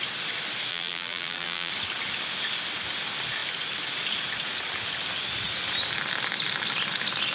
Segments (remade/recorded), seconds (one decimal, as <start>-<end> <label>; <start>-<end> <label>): 0.0-0.7 recorded; 0.7-1.7 remade; 1.7-7.3 recorded